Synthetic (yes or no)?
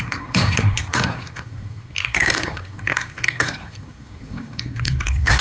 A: yes